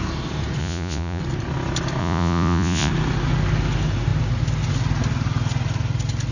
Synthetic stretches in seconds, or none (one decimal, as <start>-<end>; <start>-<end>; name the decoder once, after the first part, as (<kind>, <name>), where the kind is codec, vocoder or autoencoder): 0.6-1.2 (vocoder, Vocos); 2.0-2.9